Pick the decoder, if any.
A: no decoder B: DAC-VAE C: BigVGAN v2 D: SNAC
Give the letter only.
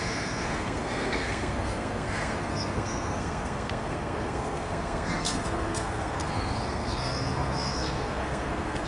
D